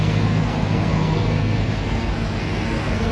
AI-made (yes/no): yes